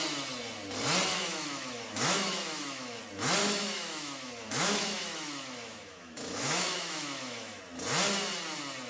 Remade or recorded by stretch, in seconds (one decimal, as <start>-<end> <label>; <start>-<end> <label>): 0.0-1.1 recorded; 1.1-3.0 remade; 3.0-3.4 recorded; 3.4-7.6 remade; 7.6-8.9 recorded